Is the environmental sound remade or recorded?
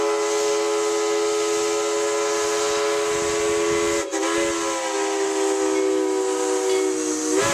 recorded